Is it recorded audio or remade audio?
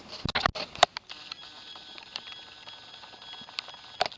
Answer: recorded